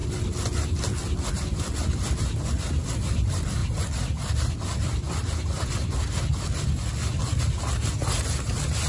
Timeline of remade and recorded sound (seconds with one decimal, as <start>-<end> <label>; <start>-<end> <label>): 0.0-8.9 recorded